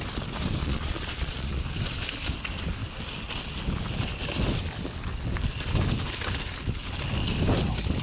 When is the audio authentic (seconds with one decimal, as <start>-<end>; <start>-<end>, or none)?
0.0-0.6; 1.6-8.0